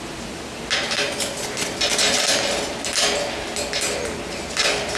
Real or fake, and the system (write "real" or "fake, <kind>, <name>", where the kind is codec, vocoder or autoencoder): real